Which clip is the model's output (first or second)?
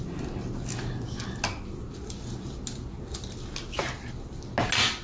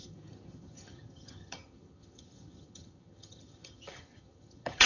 second